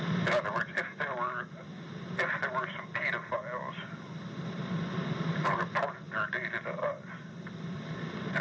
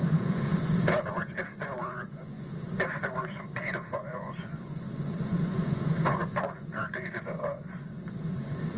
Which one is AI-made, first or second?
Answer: second